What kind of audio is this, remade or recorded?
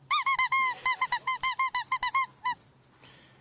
recorded